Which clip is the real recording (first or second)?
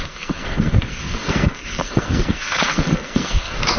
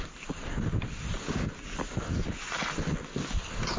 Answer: second